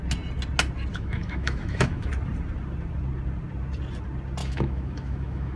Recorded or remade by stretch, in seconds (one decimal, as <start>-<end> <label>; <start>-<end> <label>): 0.0-0.9 recorded; 0.9-2.1 remade; 2.1-4.4 recorded; 4.4-5.6 remade